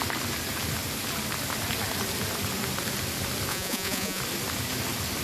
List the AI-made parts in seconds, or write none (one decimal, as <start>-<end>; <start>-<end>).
3.5-4.2